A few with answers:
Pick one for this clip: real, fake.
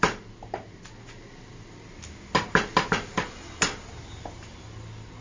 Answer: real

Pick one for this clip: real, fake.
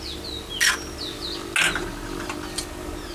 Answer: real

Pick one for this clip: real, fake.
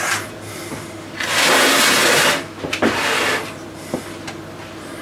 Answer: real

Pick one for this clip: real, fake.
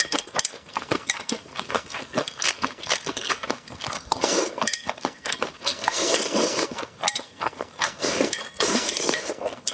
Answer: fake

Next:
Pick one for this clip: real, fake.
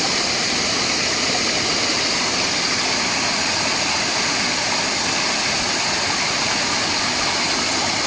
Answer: real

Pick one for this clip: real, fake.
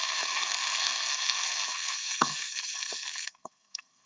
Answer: fake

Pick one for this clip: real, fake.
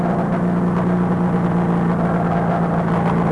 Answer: real